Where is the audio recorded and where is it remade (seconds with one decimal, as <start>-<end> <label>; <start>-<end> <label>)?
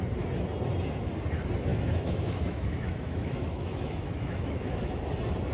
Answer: 0.0-1.7 recorded; 1.7-5.0 remade; 5.0-5.5 recorded